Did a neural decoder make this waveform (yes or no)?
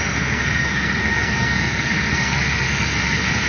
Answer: yes